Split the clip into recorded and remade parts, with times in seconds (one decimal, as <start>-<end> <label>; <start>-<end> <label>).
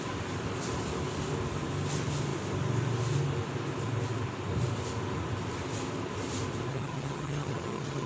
0.0-6.7 recorded; 6.7-8.1 remade